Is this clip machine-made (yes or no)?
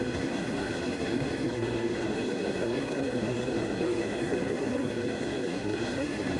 yes